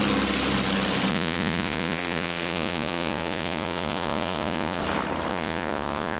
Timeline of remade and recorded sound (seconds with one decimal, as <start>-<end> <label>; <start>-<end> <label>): 0.0-1.1 recorded; 1.1-4.8 remade; 4.8-5.3 recorded; 5.3-6.2 remade